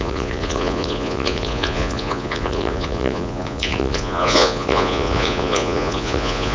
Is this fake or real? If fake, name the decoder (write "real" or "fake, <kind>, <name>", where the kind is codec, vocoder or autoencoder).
fake, vocoder, Vocos